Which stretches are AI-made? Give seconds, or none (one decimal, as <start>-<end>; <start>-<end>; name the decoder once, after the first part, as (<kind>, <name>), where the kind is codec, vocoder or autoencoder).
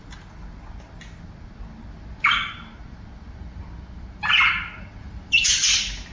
5.0-5.6 (vocoder, BigVGAN v2)